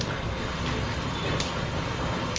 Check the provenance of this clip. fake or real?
real